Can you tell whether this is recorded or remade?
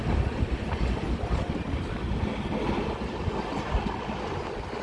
recorded